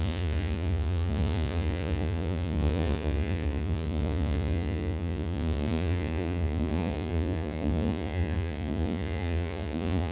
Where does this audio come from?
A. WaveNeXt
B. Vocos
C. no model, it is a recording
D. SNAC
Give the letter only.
B